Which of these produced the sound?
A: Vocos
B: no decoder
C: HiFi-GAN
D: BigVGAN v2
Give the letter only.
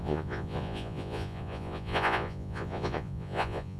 A